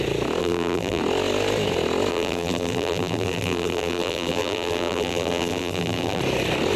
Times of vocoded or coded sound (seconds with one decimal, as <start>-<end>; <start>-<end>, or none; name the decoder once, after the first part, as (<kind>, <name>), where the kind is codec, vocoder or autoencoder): 0.4-1.0 (vocoder, BigVGAN v2); 2.1-6.2